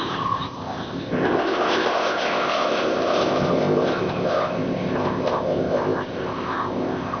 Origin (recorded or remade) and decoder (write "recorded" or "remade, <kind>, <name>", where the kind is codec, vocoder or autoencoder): remade, codec, ZipCodec